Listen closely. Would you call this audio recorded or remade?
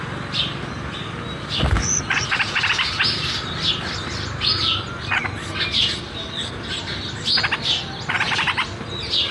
recorded